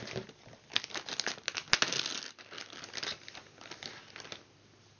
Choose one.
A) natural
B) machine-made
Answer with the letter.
A